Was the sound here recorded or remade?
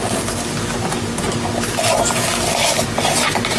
recorded